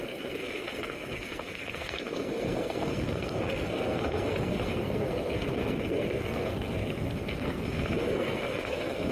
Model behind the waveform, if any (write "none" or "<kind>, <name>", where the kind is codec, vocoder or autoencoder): codec, SNAC